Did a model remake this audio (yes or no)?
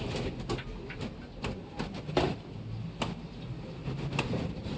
no